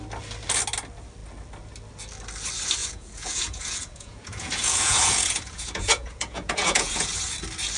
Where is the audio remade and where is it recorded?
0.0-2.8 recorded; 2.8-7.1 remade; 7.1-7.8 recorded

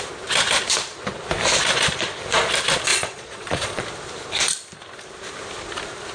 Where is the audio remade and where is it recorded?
0.0-2.9 recorded; 2.9-3.8 remade; 3.8-6.1 recorded

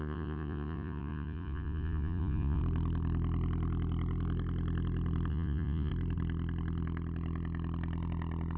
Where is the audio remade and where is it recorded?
0.0-2.6 remade; 2.6-5.3 recorded; 5.3-5.9 remade; 5.9-8.6 recorded